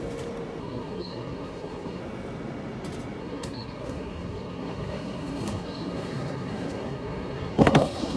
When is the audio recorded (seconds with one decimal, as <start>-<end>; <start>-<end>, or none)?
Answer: 0.0-0.6; 2.0-3.2